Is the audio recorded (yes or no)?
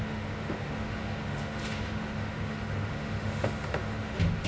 no